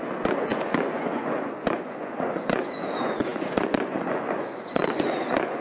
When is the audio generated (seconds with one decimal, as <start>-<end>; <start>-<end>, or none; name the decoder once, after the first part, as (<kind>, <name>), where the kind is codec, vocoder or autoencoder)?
0.0-5.6 (vocoder, Vocos)